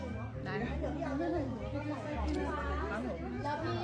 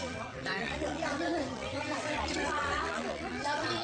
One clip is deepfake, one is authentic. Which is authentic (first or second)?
first